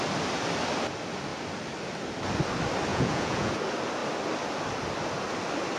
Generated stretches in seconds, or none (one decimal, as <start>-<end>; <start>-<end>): 2.9-3.5